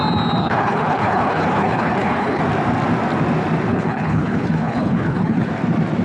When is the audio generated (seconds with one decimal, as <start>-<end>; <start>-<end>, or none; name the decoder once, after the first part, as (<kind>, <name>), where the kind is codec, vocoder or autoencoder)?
0.4-2.4 (codec, HILCodec); 3.7-5.5